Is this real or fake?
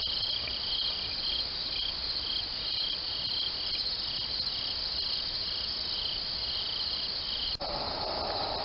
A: real